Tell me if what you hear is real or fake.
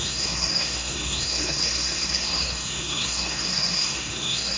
fake